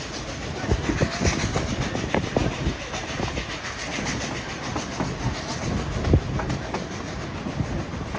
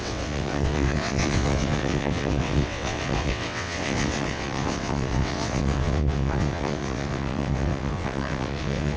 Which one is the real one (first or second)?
first